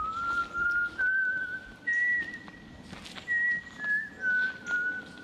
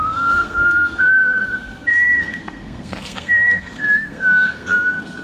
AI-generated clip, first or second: second